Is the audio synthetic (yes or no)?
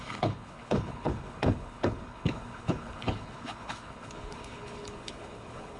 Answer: yes